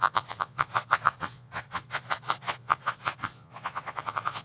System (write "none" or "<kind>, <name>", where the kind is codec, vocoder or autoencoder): vocoder, Vocos